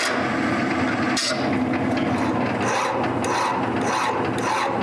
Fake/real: real